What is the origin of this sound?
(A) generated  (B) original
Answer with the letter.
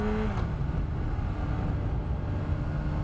B